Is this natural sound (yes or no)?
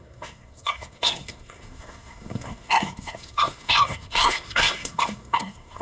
no